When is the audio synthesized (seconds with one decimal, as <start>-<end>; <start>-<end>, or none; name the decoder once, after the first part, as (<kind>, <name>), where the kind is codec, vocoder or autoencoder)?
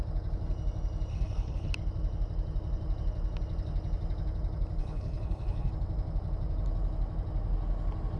1.1-1.7 (codec, HILCodec); 4.8-5.7